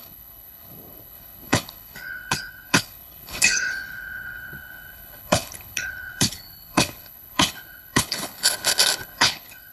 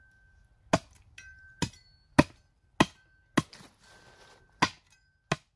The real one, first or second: second